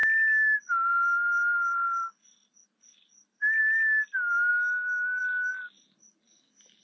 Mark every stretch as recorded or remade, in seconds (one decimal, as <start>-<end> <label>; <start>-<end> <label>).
0.0-4.5 recorded; 4.5-5.2 remade; 5.2-6.8 recorded